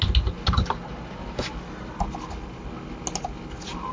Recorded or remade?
recorded